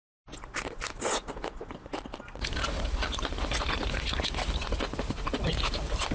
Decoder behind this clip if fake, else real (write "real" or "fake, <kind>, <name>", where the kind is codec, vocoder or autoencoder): real